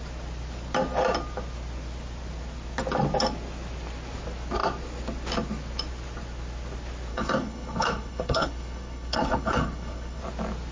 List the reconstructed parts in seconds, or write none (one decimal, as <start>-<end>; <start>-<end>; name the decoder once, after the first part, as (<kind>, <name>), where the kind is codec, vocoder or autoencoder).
7.1-10.2 (codec, HILCodec)